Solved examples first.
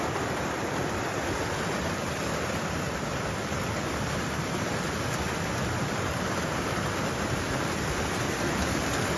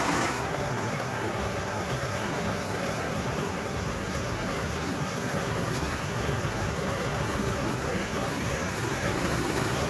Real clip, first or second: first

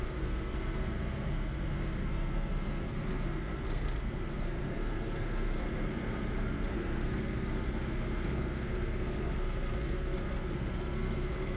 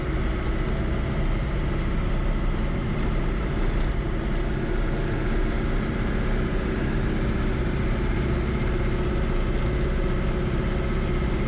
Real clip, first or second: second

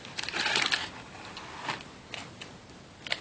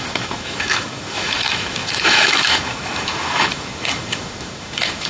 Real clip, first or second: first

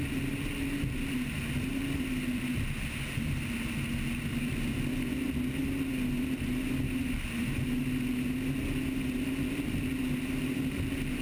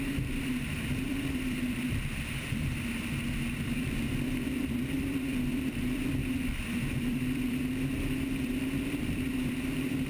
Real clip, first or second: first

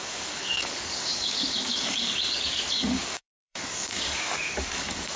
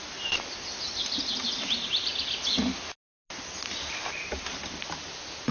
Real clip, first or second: second